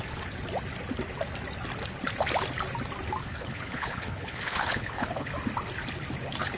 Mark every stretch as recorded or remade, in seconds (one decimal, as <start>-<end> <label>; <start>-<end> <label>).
0.0-3.2 recorded; 3.2-5.3 remade; 5.3-6.6 recorded